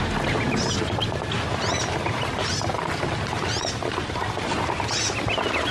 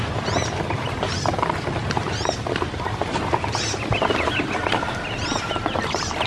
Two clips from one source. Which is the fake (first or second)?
second